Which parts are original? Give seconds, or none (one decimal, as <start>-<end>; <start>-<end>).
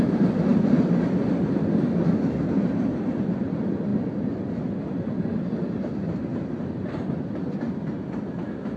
0.0-6.3; 7.1-8.8